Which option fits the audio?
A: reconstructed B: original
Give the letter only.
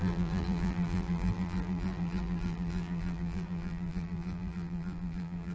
A